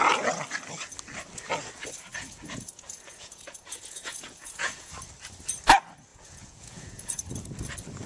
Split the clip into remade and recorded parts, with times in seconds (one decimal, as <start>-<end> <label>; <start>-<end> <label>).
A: 0.0-2.1 recorded; 2.1-4.9 remade; 4.9-6.1 recorded; 6.1-7.2 remade; 7.2-8.1 recorded